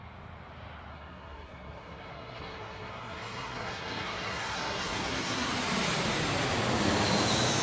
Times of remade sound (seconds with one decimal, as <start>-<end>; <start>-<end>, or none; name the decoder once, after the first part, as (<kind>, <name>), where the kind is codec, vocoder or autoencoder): 0.9-5.5 (codec, SNAC)